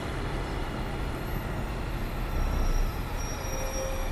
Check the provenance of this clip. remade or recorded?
recorded